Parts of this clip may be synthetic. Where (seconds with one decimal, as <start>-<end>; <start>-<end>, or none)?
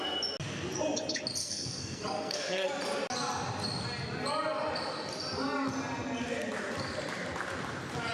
1.4-2.7